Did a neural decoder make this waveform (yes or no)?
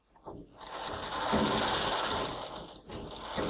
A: no